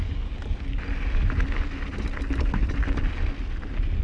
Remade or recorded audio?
recorded